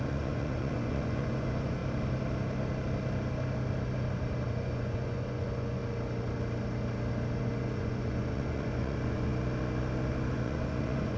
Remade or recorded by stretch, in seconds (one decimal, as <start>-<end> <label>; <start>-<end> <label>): 0.0-1.8 remade; 1.8-4.5 recorded; 4.5-5.8 remade; 5.8-7.4 recorded; 7.4-9.3 remade; 9.3-10.3 recorded; 10.3-11.2 remade